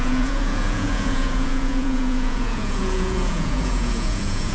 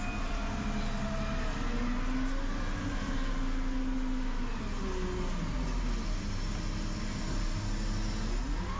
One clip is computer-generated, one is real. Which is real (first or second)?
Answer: second